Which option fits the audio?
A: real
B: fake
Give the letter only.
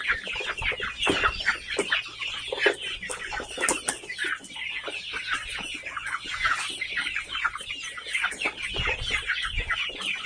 A